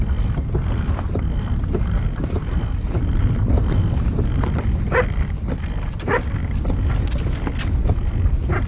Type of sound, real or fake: real